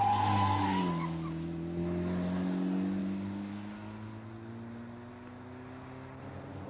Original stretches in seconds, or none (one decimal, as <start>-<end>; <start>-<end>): 0.0-6.7